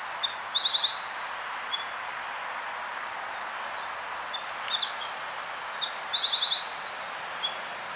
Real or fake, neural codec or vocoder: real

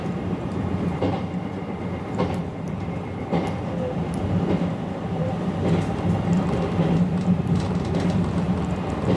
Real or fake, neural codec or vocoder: fake, vocoder, BigVGAN v2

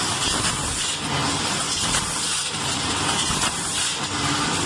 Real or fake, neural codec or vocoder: fake, vocoder, BigVGAN v2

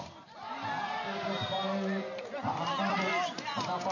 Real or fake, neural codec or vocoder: fake, vocoder, BigVGAN v2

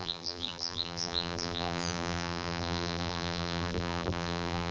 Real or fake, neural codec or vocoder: fake, vocoder, BigVGAN v2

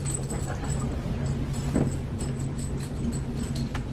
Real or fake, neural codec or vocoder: real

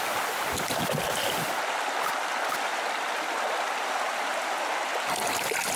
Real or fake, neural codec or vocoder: real